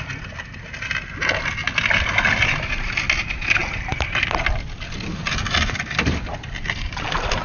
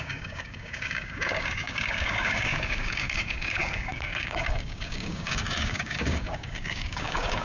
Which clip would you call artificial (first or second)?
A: second